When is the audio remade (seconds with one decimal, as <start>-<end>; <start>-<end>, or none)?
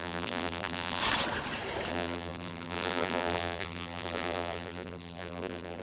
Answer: 0.0-1.0; 1.9-5.8